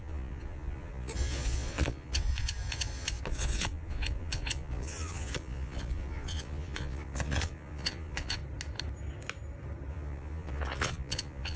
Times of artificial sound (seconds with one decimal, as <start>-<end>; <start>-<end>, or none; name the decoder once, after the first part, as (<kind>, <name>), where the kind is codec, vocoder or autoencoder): 0.0-8.4 (vocoder, Vocos); 9.9-11.6